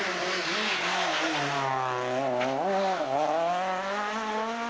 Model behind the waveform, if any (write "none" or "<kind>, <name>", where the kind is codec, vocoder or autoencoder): none